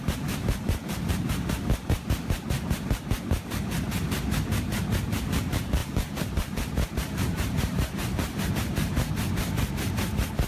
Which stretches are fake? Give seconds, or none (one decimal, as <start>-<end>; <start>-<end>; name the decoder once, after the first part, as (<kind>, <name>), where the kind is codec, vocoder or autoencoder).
5.8-8.5 (vocoder, BigVGAN v2)